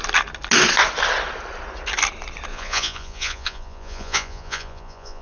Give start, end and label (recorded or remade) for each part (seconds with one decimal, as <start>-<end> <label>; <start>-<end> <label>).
0.0-2.5 recorded; 2.5-5.2 remade